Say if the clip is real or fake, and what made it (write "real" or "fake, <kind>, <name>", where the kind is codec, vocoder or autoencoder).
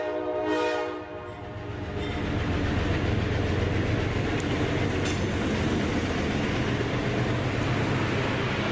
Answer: real